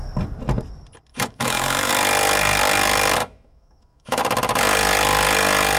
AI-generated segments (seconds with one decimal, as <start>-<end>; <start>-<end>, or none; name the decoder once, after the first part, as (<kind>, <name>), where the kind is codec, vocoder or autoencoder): 1.1-1.9 (autoencoder, DAC-VAE); 3.2-4.2